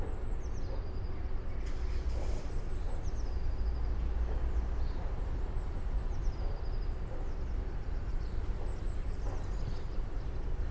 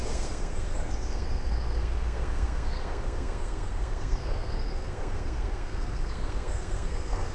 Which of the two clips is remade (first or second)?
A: second